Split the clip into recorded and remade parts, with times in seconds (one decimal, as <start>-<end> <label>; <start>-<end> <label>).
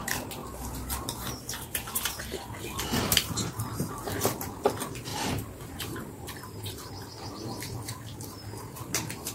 0.0-5.1 recorded; 5.1-6.9 remade; 6.9-9.3 recorded